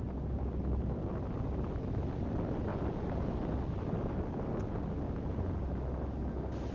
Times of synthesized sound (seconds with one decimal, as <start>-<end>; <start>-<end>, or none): none